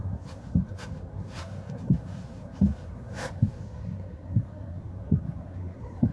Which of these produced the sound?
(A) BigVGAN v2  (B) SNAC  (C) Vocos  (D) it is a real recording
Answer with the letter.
B